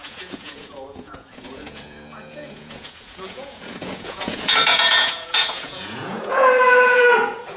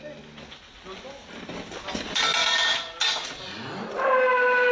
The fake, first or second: first